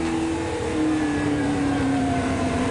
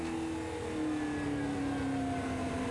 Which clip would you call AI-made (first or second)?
first